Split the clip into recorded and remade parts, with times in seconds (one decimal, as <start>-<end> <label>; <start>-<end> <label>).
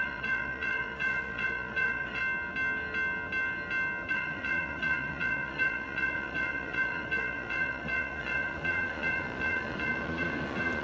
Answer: 0.0-2.2 remade; 2.2-4.1 recorded; 4.1-10.8 remade